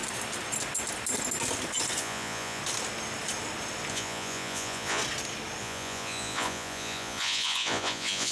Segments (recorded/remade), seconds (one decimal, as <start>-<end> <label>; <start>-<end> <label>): 0.0-2.0 recorded; 2.0-2.6 remade; 2.6-3.9 recorded; 3.9-5.0 remade; 5.0-5.6 recorded; 5.6-8.3 remade